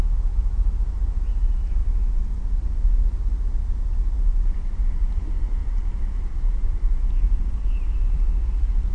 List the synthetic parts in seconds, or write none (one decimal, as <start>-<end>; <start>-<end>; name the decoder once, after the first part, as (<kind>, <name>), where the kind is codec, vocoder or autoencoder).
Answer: 5.6-8.9 (vocoder, BigVGAN v2)